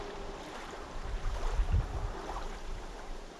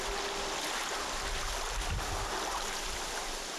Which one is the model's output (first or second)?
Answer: first